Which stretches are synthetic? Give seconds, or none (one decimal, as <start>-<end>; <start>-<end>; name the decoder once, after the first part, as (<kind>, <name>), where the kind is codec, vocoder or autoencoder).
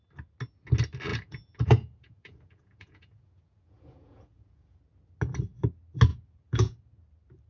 1.1-4.8 (vocoder, Vocos); 6.1-6.8